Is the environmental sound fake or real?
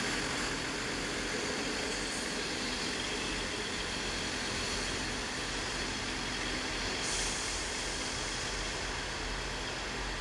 real